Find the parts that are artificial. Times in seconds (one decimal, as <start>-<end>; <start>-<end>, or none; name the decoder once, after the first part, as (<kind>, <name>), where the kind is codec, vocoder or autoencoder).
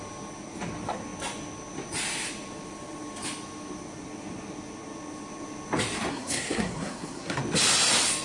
6.1-7.4 (codec, SNAC)